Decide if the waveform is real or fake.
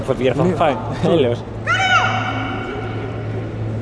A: real